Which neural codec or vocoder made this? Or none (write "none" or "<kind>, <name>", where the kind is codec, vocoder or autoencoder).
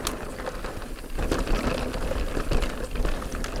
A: none